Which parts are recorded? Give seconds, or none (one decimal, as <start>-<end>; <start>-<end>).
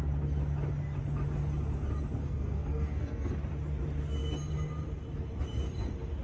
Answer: 0.0-2.2; 3.3-6.2